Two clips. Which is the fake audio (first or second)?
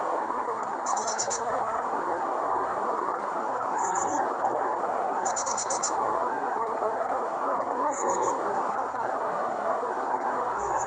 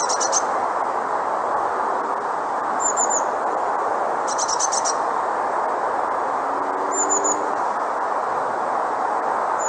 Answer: first